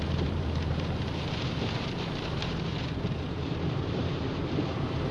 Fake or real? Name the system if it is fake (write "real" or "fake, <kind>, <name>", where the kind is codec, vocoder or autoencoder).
fake, vocoder, BigVGAN v2